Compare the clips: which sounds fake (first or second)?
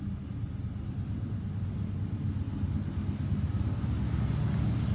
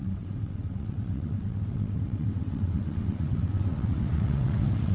second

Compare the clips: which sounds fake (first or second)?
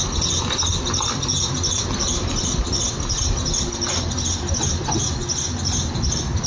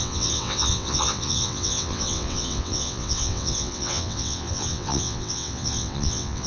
second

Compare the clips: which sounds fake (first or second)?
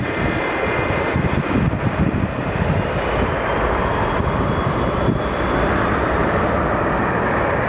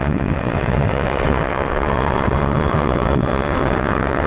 second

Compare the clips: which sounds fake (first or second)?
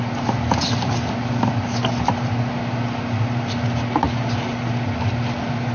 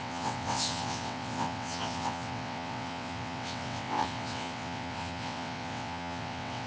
second